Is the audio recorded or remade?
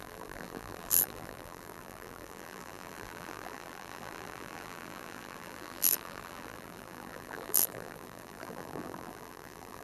remade